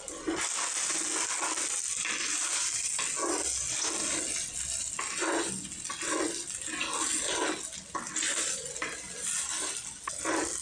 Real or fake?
real